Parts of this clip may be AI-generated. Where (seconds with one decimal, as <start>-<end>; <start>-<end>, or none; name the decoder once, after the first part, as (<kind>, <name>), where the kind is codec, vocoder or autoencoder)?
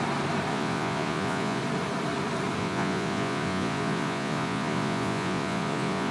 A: 0.5-1.6 (vocoder, Vocos); 2.6-6.1